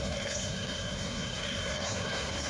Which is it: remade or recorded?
remade